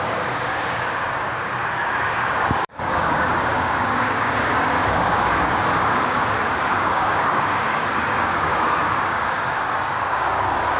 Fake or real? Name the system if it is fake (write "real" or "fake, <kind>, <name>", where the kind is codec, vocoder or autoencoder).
fake, codec, DAC